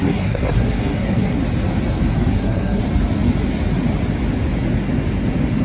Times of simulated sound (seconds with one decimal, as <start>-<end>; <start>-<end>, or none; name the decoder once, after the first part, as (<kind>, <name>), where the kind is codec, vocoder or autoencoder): 0.0-1.4 (codec, SNAC); 2.3-2.8